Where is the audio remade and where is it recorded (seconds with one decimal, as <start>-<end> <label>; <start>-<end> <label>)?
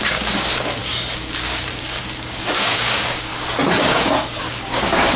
0.0-3.3 remade; 3.3-4.4 recorded; 4.4-5.2 remade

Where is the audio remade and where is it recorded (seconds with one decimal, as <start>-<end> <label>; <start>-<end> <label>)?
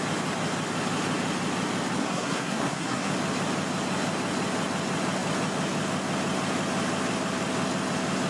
0.0-2.0 recorded; 2.0-3.1 remade; 3.1-8.3 recorded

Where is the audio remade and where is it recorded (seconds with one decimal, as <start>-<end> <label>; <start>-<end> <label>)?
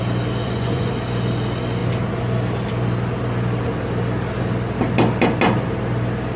0.0-0.4 recorded; 0.4-0.9 remade; 0.9-6.4 recorded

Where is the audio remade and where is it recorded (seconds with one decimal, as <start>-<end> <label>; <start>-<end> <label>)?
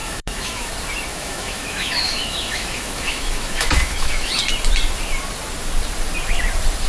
0.0-0.7 remade; 0.7-1.1 recorded; 1.1-4.3 remade; 4.3-6.9 recorded